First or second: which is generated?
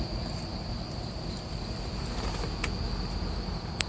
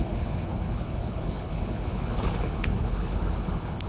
second